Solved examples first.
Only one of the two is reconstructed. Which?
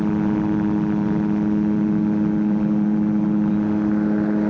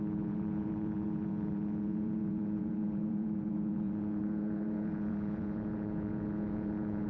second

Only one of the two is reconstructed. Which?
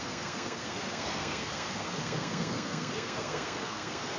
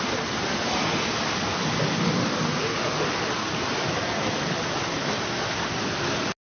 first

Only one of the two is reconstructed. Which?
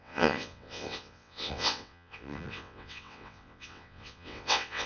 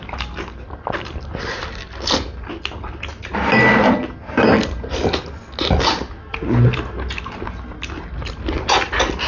first